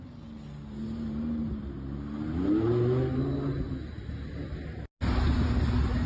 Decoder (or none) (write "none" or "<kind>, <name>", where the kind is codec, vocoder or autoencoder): none